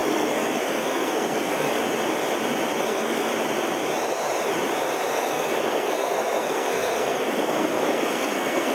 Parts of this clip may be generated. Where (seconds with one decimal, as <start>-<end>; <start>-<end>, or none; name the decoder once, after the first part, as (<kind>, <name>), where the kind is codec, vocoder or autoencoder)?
0.0-1.8 (codec, SNAC); 2.8-3.3; 5.1-8.7